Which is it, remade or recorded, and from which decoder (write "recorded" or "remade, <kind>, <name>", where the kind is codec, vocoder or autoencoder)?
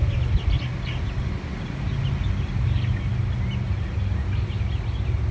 recorded